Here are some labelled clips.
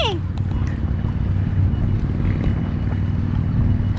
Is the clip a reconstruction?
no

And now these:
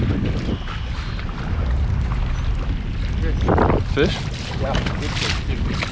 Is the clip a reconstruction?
no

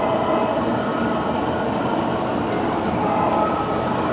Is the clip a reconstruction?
no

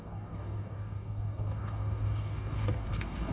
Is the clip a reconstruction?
yes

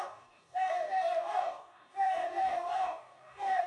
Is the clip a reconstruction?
yes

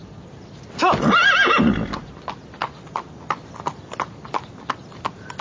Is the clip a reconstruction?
no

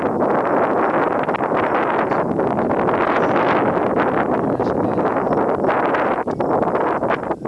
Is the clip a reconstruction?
no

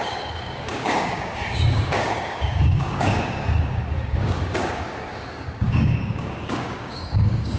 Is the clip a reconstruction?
yes